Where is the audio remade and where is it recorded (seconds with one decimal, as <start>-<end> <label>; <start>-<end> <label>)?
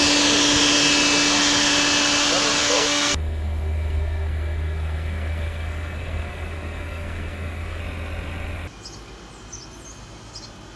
0.0-2.6 recorded; 2.6-7.8 remade; 7.8-10.8 recorded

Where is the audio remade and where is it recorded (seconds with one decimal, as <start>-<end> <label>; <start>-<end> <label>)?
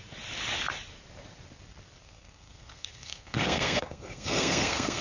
0.0-2.0 recorded; 2.0-5.0 remade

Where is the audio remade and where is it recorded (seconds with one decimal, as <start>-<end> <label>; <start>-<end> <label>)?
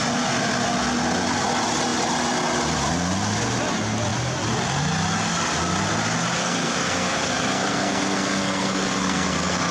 0.0-6.4 recorded; 6.4-9.7 remade